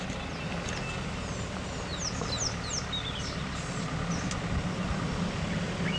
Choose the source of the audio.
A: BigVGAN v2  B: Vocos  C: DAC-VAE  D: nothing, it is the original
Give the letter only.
D